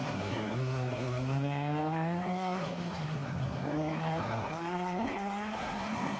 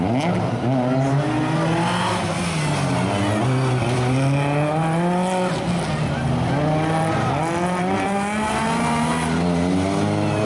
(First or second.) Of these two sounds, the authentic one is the second